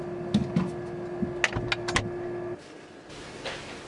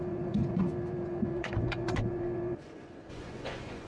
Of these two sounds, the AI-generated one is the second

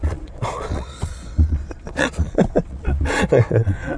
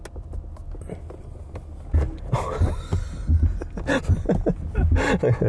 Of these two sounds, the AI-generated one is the first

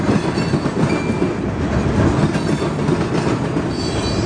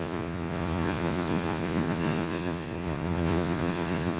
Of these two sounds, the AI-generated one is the second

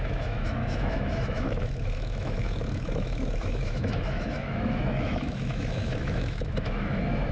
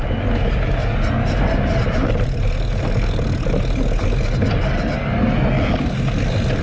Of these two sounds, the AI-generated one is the first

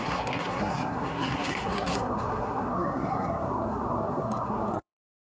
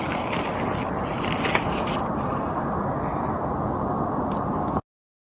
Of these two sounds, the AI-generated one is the first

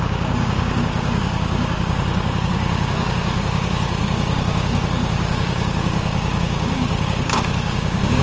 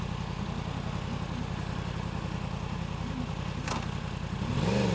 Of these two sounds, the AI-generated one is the first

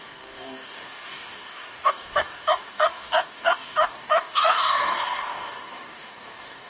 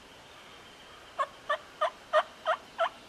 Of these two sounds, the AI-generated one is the first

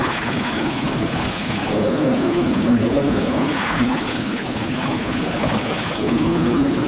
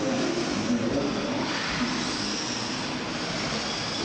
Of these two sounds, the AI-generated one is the first